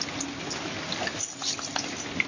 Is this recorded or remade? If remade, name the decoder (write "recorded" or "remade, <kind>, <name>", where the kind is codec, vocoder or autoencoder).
recorded